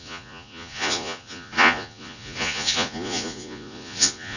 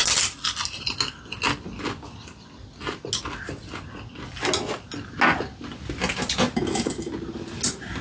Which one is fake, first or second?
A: first